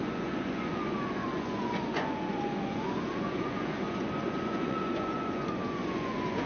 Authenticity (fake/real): fake